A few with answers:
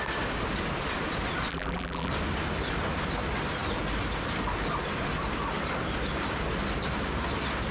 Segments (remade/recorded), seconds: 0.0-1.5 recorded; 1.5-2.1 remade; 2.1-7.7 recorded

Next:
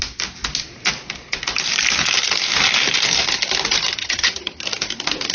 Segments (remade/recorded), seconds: 0.0-4.0 recorded; 4.0-4.6 remade; 4.6-5.3 recorded

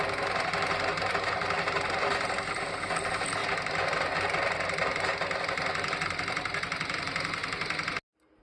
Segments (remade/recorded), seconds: 0.0-3.4 recorded; 3.4-4.1 remade; 4.1-8.4 recorded

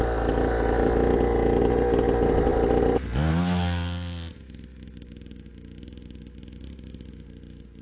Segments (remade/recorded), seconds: 0.0-7.8 recorded